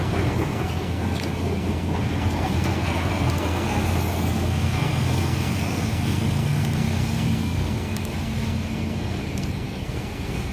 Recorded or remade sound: remade